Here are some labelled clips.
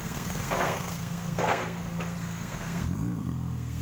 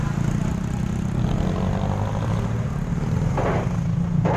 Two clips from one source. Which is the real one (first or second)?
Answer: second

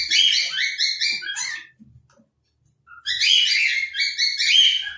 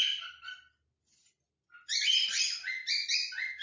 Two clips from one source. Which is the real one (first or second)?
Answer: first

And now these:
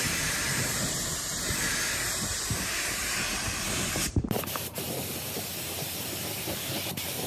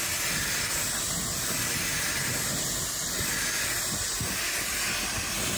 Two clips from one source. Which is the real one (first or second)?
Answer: second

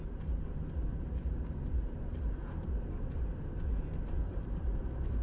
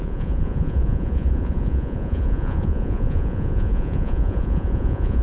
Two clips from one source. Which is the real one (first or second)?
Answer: first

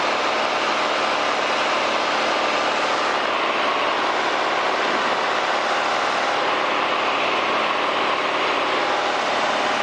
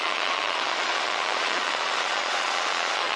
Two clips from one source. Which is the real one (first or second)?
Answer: first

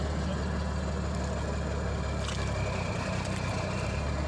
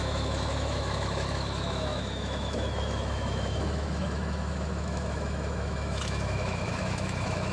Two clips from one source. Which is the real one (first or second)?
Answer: first